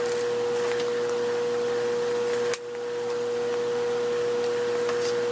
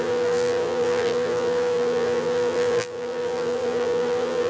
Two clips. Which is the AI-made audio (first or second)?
second